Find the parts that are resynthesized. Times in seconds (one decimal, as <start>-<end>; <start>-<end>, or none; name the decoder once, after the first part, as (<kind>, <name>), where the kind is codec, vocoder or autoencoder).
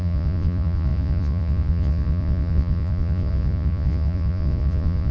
0.0-5.1 (vocoder, Vocos)